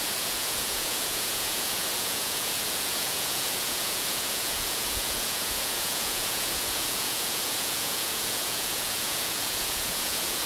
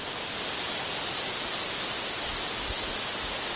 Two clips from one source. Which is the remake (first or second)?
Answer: first